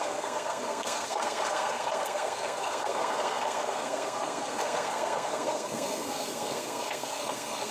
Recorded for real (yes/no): no